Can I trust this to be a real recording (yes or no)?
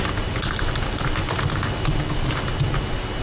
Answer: yes